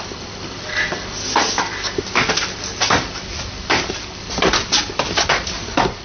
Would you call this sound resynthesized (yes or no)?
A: no